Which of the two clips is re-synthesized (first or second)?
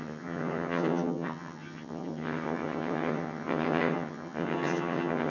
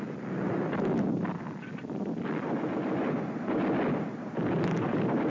first